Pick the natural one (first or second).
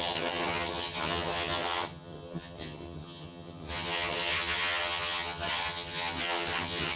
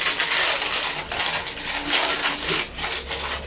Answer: second